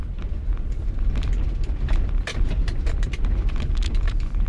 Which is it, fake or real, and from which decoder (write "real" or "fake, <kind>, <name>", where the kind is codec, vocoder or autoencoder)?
fake, vocoder, BigVGAN v2